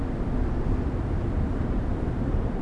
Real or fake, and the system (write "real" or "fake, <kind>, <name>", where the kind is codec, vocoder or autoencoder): real